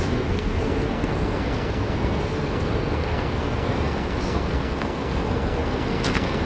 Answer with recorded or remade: remade